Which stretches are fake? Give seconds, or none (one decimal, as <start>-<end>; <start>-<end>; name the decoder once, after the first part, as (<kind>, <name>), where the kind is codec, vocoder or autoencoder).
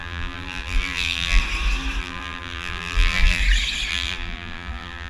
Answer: 0.0-1.4 (vocoder, BigVGAN v2); 2.0-3.4; 3.9-5.1